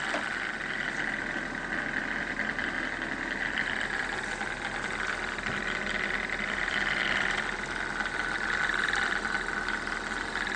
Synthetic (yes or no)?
no